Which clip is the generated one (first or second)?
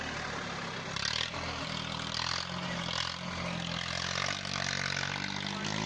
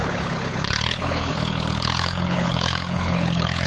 second